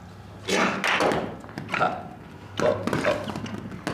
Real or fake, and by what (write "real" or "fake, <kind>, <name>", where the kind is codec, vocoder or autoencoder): real